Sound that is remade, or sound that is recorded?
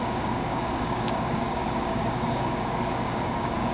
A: remade